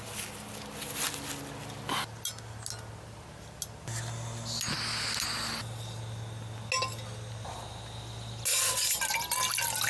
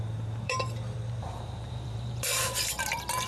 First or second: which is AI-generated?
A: second